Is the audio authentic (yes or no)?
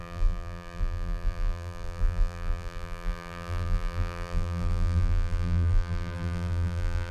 no